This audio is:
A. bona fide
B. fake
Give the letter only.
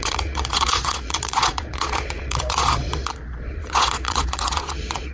B